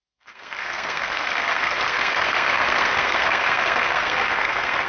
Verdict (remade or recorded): remade